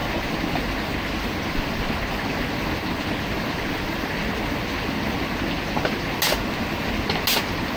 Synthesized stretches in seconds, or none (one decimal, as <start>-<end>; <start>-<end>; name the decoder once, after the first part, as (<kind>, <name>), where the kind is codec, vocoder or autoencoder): none